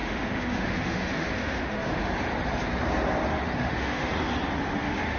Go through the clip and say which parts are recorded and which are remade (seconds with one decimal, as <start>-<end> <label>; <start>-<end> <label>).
0.0-2.0 remade; 2.0-3.3 recorded; 3.3-4.1 remade; 4.1-4.8 recorded; 4.8-5.2 remade